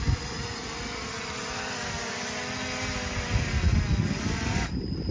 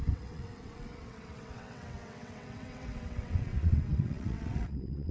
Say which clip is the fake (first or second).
second